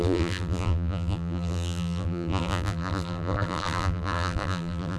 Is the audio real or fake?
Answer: fake